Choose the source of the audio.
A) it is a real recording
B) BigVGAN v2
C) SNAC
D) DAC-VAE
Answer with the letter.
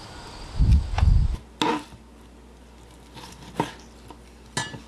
A